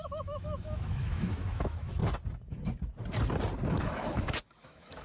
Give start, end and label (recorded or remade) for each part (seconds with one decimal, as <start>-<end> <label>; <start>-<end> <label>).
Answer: 0.0-2.0 remade; 2.0-3.8 recorded; 3.8-5.0 remade